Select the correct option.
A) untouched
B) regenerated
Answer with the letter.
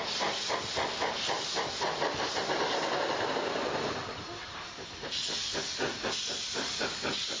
A